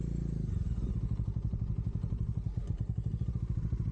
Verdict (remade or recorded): recorded